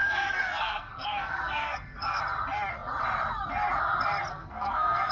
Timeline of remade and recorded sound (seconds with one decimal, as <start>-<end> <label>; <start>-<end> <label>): 0.0-2.2 remade; 2.2-4.3 recorded; 4.3-5.1 remade